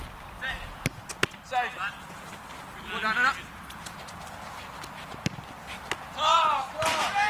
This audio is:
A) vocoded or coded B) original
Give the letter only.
B